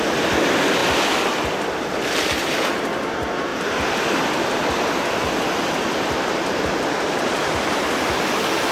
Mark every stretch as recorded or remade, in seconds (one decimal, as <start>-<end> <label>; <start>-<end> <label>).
0.0-8.7 recorded

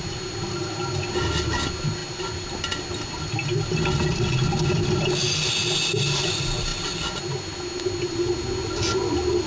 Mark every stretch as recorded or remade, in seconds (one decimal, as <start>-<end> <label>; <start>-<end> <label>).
0.0-9.5 recorded

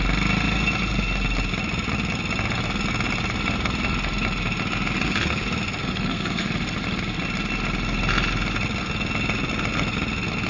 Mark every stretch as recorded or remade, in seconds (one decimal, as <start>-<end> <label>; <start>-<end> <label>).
0.0-5.8 recorded; 5.8-6.5 remade; 6.5-10.5 recorded